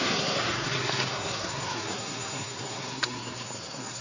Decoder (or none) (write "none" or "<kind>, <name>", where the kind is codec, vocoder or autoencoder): codec, SNAC